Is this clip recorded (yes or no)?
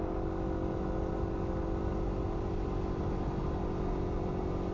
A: yes